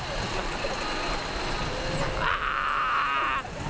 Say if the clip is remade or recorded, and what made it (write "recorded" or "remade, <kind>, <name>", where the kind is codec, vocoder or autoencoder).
recorded